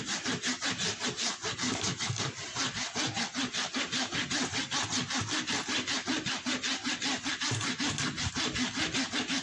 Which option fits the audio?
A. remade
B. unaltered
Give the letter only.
B